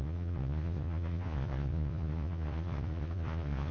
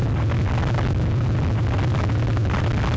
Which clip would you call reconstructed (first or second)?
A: first